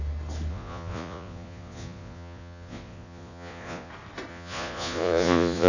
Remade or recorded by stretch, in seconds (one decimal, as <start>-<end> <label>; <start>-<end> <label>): 0.0-0.5 recorded; 0.5-3.9 remade; 3.9-4.3 recorded; 4.3-5.7 remade